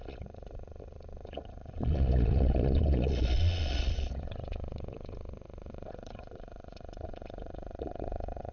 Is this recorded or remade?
remade